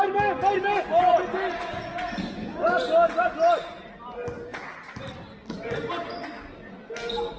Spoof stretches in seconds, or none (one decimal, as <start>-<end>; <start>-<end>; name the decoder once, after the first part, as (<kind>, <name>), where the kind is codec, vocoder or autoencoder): none